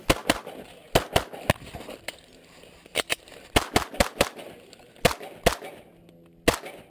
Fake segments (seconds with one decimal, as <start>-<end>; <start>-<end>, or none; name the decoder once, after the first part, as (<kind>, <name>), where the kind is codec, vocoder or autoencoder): none